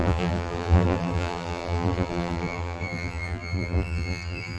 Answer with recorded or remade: remade